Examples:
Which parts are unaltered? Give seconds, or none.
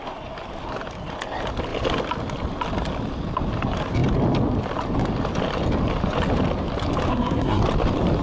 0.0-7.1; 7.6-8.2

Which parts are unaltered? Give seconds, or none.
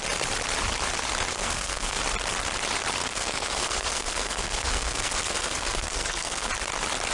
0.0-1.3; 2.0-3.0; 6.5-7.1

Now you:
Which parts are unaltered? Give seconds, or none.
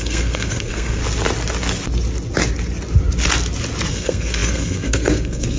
1.0-3.9